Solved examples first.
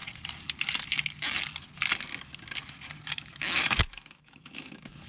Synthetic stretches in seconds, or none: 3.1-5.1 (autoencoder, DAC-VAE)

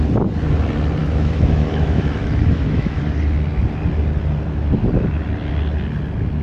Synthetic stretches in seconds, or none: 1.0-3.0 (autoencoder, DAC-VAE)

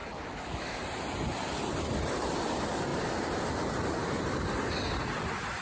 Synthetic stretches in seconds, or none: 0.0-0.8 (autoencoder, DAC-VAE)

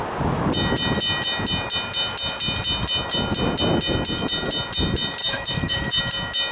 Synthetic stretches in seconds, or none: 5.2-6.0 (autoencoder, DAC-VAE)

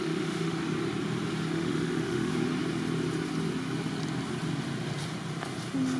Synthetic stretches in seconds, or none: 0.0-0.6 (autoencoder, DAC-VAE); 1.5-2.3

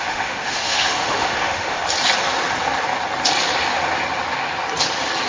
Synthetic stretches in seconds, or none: 0.0-1.8 (autoencoder, DAC-VAE)

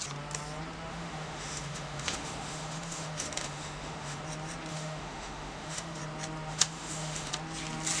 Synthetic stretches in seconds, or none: 0.9-4.2 (autoencoder, DAC-VAE); 4.7-6.0; 6.5-7.3